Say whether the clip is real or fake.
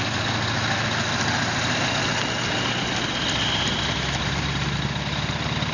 real